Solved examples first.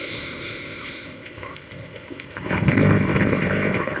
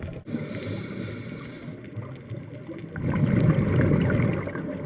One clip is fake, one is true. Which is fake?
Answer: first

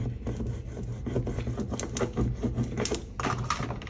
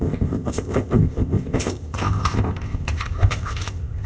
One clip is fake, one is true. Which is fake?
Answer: second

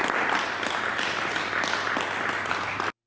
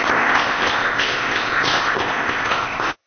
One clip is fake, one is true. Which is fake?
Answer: second